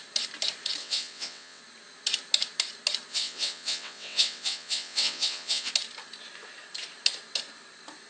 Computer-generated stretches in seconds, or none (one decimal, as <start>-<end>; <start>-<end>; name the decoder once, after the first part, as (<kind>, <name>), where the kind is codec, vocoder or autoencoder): 0.8-1.6 (vocoder, WaveNeXt); 3.1-5.7